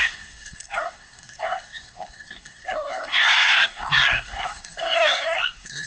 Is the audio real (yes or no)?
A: no